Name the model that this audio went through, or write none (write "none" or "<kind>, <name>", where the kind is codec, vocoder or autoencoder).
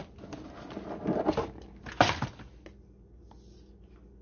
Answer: none